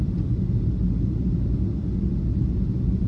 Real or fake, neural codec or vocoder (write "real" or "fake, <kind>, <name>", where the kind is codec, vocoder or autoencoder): real